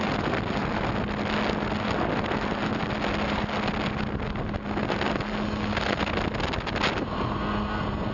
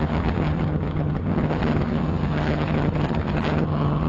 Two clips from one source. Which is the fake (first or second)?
second